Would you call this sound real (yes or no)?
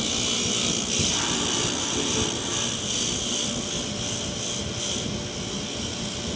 yes